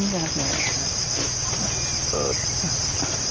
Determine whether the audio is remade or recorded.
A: recorded